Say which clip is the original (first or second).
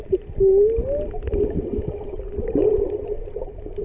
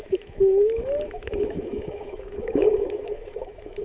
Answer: first